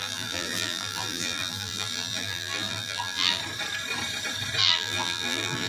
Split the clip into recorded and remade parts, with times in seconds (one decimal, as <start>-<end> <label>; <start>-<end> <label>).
0.0-3.4 remade; 3.4-4.6 recorded; 4.6-5.7 remade